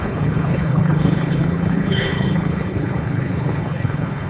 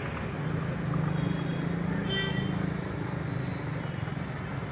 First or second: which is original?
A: second